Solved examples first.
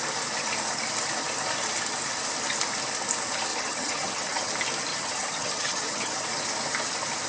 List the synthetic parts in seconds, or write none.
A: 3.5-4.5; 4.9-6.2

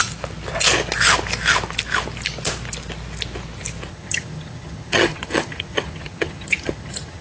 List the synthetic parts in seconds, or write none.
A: 3.9-7.2

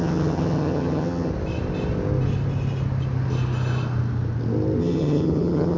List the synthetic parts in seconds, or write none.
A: 0.0-1.3; 4.8-5.8

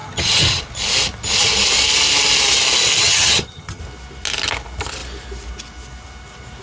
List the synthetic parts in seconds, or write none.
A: 0.0-0.6; 3.0-3.8